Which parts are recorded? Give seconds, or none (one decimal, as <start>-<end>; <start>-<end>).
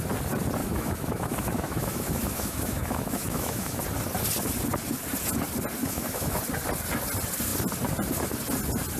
0.0-0.6; 3.8-5.8; 6.4-9.0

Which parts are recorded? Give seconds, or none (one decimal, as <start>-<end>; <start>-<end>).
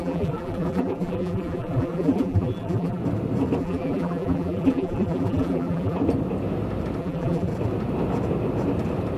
3.0-3.6; 6.0-7.0; 7.5-9.2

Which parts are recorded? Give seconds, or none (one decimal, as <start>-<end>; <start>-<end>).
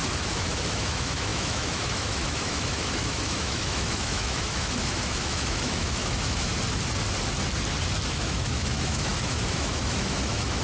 6.5-8.1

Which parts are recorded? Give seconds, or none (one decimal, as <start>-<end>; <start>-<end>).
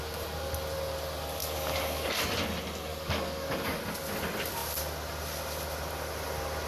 0.0-1.4; 2.2-2.9; 3.8-6.7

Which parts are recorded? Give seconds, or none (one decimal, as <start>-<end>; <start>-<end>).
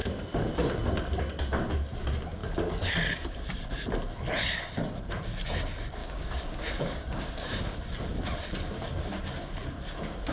0.0-6.0; 7.6-10.3